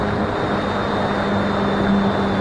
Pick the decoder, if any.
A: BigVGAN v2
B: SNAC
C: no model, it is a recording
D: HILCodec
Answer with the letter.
C